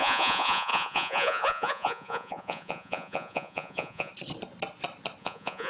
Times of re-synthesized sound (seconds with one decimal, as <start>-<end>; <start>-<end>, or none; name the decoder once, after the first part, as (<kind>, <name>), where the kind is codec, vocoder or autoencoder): 0.0-4.1 (vocoder, Vocos); 5.2-5.7